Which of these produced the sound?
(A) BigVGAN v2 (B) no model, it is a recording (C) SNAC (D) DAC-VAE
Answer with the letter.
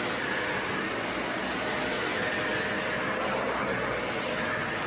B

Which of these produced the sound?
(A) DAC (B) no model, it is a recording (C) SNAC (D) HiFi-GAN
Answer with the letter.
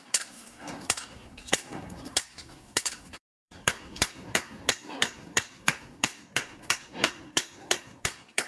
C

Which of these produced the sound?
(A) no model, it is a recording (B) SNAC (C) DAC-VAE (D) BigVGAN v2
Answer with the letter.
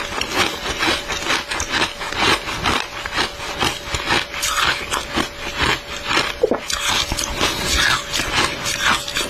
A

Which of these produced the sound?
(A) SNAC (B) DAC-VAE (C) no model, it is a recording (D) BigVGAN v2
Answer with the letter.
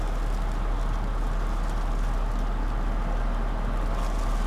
C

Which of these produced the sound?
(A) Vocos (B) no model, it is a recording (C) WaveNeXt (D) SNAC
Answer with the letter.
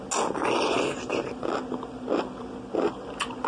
B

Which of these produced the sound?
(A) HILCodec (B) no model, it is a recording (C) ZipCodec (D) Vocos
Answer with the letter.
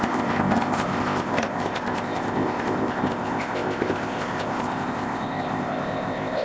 C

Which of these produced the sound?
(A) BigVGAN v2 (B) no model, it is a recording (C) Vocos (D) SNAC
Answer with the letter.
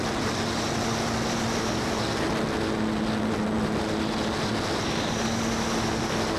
B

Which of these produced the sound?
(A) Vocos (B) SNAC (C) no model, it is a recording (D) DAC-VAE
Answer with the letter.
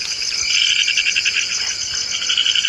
C